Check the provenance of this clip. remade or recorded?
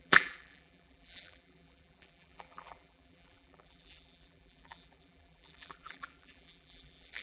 remade